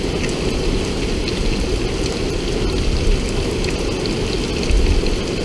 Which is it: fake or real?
real